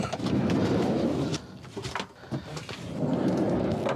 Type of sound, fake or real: real